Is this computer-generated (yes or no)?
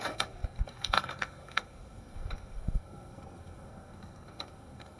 yes